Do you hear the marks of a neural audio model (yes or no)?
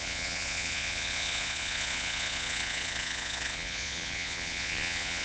yes